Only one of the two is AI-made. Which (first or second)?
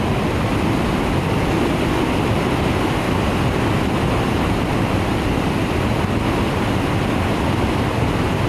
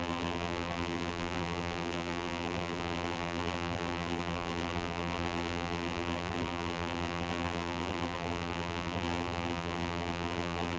second